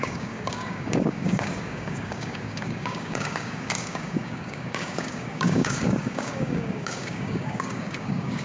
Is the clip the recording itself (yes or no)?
no